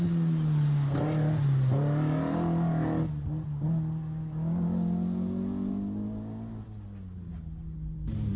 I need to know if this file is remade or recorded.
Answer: recorded